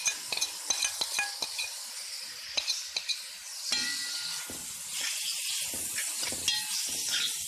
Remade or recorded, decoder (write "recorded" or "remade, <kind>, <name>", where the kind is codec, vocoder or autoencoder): recorded